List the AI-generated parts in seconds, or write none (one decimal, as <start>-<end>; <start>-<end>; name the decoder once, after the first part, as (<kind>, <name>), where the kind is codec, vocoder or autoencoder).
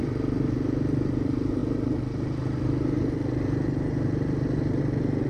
none